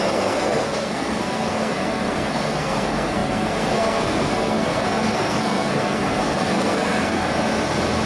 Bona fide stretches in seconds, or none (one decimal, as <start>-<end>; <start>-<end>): 7.3-8.1